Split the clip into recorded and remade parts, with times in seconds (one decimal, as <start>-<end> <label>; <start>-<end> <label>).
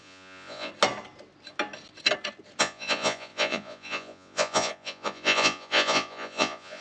0.0-0.7 remade; 0.7-2.6 recorded; 2.6-6.8 remade